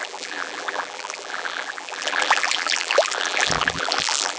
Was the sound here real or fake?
fake